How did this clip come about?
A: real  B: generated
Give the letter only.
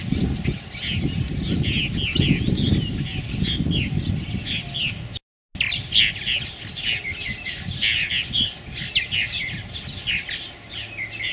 A